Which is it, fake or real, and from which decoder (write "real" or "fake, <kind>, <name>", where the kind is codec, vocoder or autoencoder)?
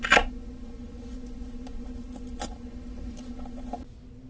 real